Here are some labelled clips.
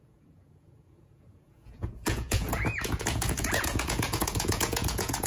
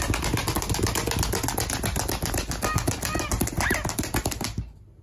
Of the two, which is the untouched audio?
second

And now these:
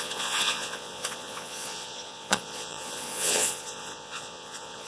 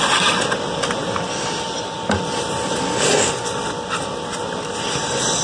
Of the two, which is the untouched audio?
second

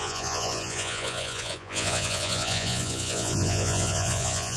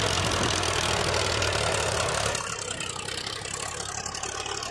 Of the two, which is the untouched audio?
second